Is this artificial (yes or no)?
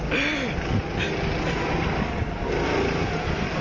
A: no